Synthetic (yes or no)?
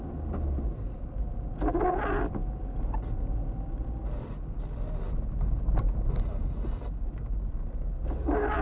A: no